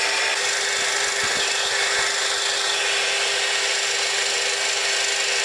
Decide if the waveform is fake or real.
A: real